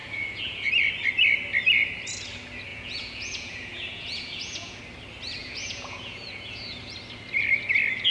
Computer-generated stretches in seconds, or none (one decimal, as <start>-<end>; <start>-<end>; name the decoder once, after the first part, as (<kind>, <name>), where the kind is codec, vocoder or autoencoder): 0.0-0.7 (vocoder, Vocos); 2.7-4.8; 5.4-6.8